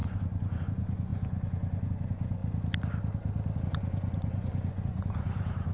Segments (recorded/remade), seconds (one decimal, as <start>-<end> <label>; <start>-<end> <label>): 0.0-2.4 remade; 2.4-3.6 recorded; 3.6-5.7 remade

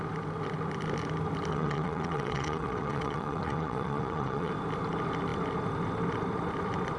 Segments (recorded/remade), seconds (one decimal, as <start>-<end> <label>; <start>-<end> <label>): 0.0-1.5 recorded; 1.5-4.5 remade; 4.5-7.0 recorded

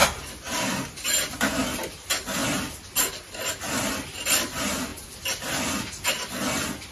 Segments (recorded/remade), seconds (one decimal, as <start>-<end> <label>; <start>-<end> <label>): 0.0-6.9 recorded

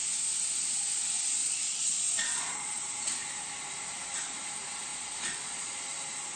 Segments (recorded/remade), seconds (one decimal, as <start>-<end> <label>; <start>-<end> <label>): 0.0-1.4 recorded; 1.4-2.8 remade; 2.8-4.9 recorded; 4.9-5.8 remade; 5.8-6.4 recorded

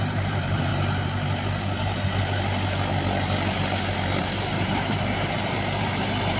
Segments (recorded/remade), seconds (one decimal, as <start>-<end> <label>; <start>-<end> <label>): 0.0-0.7 remade; 0.7-4.2 recorded; 4.2-6.4 remade

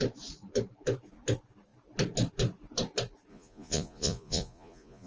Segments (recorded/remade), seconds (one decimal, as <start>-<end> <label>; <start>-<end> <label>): 0.0-3.3 recorded; 3.3-5.1 remade

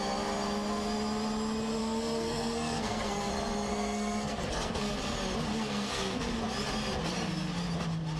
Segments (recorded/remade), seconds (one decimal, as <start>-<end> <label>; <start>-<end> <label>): 0.0-1.8 recorded; 1.8-3.3 remade; 3.3-3.7 recorded; 3.7-4.9 remade; 4.9-5.5 recorded; 5.5-6.4 remade; 6.4-8.2 recorded